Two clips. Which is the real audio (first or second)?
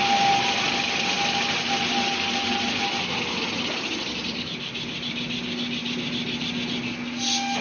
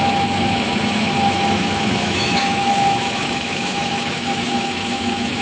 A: first